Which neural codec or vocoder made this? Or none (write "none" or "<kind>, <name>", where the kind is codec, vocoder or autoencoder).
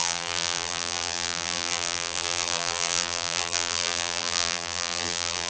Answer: vocoder, BigVGAN v2